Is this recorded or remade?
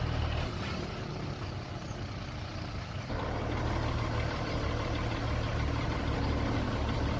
recorded